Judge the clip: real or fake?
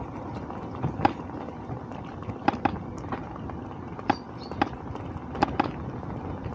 real